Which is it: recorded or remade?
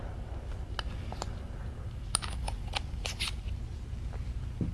recorded